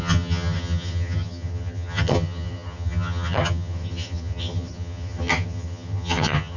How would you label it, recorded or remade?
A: remade